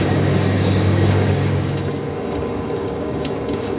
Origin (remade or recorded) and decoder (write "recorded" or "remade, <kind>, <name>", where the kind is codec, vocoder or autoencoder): remade, codec, DAC